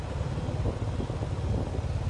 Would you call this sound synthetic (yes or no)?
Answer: no